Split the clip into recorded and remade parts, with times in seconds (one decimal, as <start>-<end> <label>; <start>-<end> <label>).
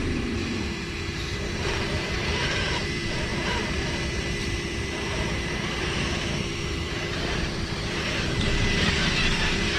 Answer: 0.0-9.8 remade